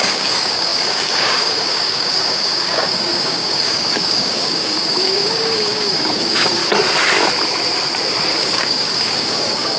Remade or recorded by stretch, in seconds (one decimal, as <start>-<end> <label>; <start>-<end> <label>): 0.0-6.6 remade; 6.6-8.4 recorded; 8.4-9.8 remade